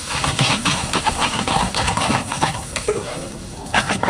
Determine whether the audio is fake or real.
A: fake